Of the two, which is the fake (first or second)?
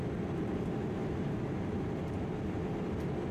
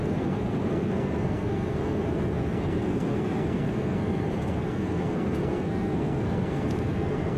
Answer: second